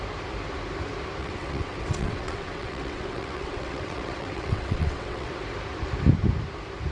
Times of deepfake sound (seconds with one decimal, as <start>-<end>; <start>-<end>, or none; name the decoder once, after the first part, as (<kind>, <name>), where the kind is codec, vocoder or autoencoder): 1.2-5.3 (vocoder, WaveNeXt)